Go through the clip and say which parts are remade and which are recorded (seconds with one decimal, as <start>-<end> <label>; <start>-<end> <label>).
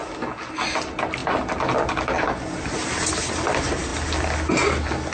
0.0-5.1 recorded